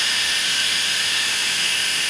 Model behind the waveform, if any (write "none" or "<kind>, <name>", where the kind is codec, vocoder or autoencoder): autoencoder, DAC-VAE